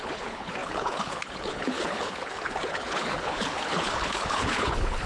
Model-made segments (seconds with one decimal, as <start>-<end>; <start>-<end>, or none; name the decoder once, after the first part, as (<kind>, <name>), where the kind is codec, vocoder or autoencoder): 0.0-5.1 (codec, HILCodec)